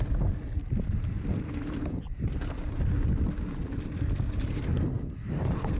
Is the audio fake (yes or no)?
no